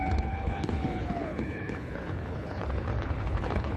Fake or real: fake